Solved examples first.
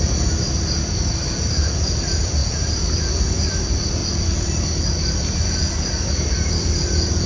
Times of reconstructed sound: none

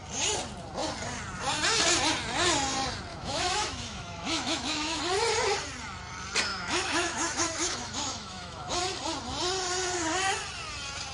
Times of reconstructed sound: 3.1-5.0 (autoencoder, DAC-VAE); 6.5-8.8

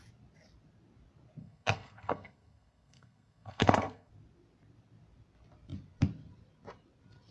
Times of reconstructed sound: 1.4-4.1 (codec, SNAC)

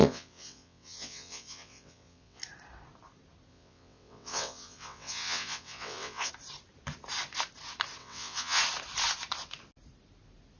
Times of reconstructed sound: 0.0-2.4 (vocoder, WaveNeXt); 3.5-6.3; 8.0-8.6